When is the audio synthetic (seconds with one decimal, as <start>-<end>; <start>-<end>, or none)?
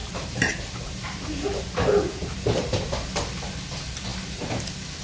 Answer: 0.0-2.9